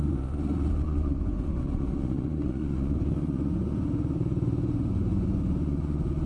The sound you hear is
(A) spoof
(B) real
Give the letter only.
A